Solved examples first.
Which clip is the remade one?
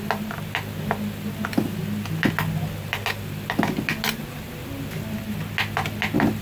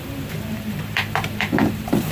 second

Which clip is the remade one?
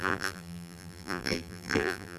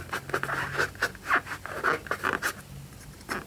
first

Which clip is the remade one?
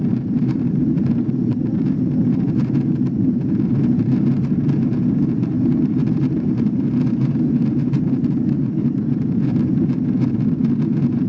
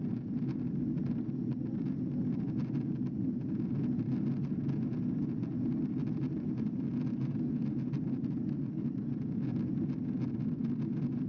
first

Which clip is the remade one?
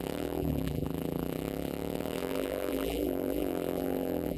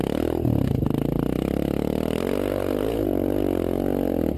first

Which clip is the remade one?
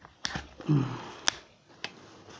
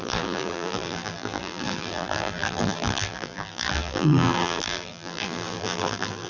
second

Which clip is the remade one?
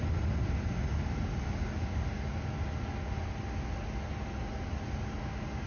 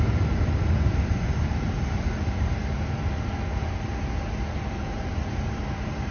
second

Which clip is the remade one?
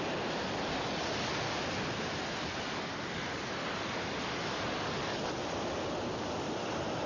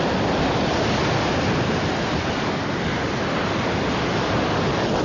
second